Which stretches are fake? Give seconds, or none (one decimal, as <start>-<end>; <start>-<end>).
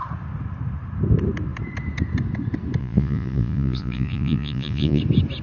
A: 2.8-5.0